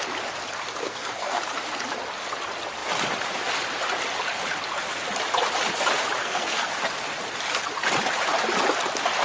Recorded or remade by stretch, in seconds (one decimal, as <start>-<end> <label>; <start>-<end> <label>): 0.0-0.8 recorded; 0.8-1.4 remade; 1.4-6.2 recorded; 6.2-6.7 remade; 6.7-9.2 recorded